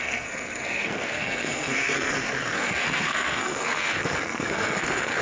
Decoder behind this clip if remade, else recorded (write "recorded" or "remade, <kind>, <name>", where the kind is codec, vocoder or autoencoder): remade, codec, SNAC